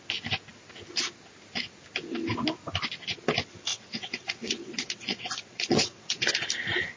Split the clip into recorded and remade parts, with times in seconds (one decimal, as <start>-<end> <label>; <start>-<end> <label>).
0.0-3.7 recorded; 3.7-6.3 remade; 6.3-7.0 recorded